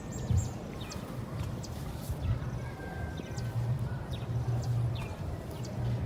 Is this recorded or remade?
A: remade